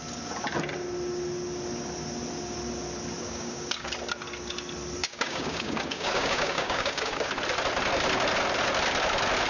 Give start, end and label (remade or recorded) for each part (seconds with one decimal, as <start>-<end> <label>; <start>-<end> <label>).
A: 0.0-3.2 recorded; 3.2-3.9 remade; 3.9-5.0 recorded; 5.0-7.3 remade; 7.3-9.5 recorded